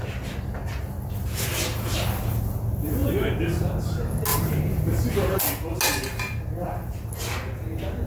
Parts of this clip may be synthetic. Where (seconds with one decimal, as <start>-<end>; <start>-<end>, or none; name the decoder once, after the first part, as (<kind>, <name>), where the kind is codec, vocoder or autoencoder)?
4.3-5.4 (vocoder, BigVGAN v2)

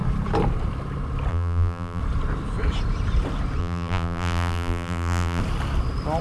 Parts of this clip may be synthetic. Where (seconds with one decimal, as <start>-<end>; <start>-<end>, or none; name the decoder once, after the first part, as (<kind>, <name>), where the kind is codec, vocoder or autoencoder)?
1.3-2.0 (vocoder, BigVGAN v2); 3.6-5.4

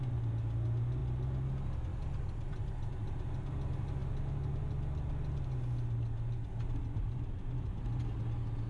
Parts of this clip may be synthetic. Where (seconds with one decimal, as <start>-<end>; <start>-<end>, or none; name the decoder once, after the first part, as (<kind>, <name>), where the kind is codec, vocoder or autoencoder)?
1.9-2.9 (vocoder, BigVGAN v2)

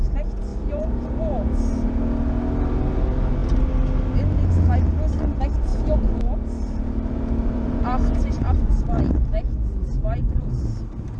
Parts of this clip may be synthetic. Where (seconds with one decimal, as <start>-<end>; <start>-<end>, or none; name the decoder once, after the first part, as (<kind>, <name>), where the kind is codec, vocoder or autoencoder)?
0.5-2.0 (vocoder, BigVGAN v2); 5.7-10.5

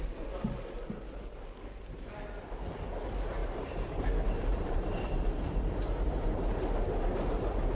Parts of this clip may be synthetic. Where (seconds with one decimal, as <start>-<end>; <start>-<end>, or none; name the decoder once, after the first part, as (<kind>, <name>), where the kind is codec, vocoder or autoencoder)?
3.4-6.5 (vocoder, BigVGAN v2)

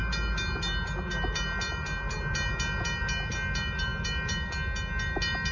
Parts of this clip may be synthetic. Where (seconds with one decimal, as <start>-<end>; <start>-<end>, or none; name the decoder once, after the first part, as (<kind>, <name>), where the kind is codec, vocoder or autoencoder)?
none

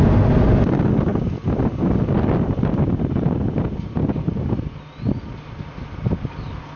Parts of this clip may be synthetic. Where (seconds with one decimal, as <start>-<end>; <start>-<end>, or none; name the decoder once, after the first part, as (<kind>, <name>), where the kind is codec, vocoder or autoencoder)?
none

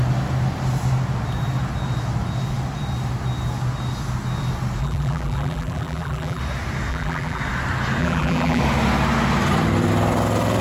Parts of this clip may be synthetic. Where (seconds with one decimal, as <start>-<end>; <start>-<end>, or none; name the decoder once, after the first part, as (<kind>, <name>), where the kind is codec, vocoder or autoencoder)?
4.8-6.4 (vocoder, BigVGAN v2); 6.9-7.4; 8.0-8.6